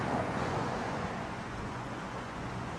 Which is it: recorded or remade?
remade